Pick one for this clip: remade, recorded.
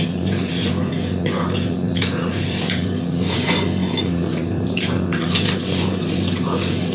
remade